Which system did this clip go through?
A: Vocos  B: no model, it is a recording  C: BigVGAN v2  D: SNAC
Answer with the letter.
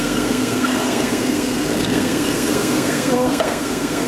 D